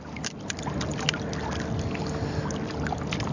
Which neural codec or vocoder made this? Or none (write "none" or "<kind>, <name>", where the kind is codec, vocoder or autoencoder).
none